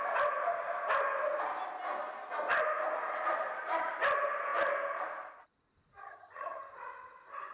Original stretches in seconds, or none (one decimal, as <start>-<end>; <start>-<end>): 0.0-6.0; 6.7-7.5